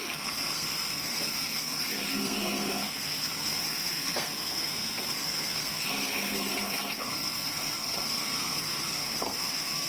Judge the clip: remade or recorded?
remade